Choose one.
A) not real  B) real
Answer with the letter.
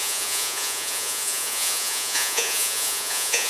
A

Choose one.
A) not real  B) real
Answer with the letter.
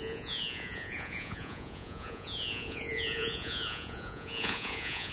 A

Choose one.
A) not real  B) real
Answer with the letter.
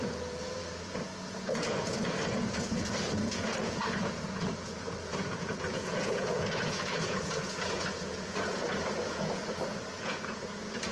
A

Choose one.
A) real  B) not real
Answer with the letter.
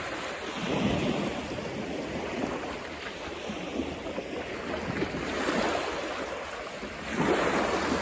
A